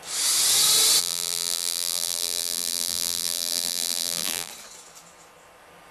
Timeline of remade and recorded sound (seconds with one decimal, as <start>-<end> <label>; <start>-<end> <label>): 0.0-1.0 recorded; 1.0-4.5 remade; 4.5-5.9 recorded